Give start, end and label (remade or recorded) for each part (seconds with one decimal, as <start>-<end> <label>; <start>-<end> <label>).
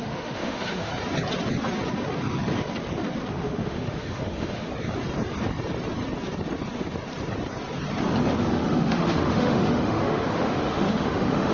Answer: 0.0-0.9 remade; 0.9-3.3 recorded; 3.3-4.7 remade; 4.7-8.4 recorded; 8.4-11.5 remade